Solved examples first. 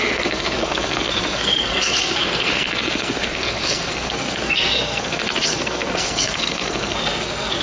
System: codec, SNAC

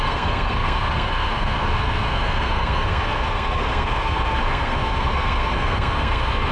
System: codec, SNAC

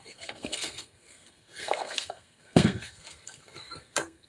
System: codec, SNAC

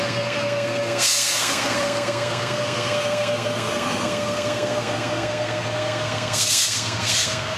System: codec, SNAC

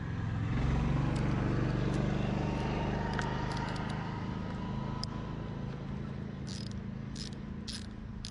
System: none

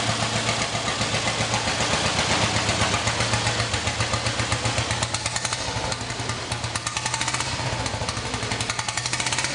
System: none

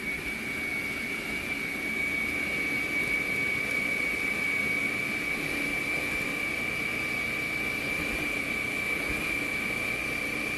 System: none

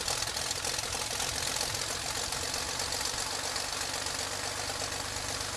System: none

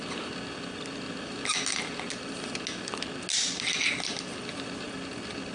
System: none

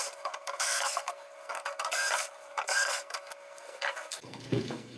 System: codec, SNAC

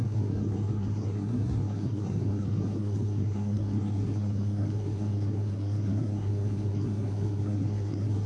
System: codec, SNAC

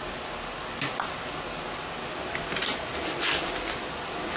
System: none